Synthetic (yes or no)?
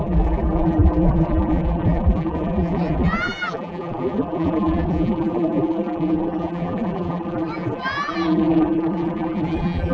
yes